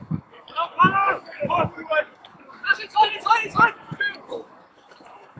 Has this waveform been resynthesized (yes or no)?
yes